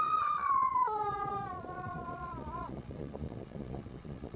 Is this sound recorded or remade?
remade